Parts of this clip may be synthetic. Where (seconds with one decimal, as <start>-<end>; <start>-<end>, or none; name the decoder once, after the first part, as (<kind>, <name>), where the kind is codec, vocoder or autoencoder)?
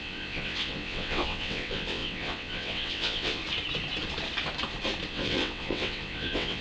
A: 0.0-3.4 (vocoder, WaveNeXt); 5.1-6.6